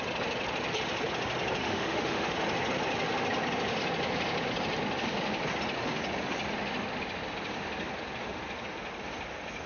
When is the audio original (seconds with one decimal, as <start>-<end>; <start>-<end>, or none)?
0.0-1.6; 2.3-9.7